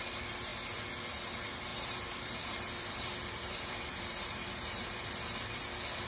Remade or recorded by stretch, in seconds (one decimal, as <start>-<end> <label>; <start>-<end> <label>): 0.0-1.7 recorded; 1.7-5.1 remade; 5.1-6.1 recorded